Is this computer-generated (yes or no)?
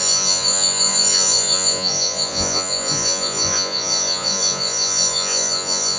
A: yes